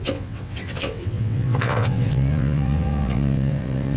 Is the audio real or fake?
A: fake